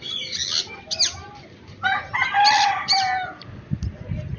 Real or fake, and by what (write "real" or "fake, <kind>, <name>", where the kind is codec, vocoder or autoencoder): real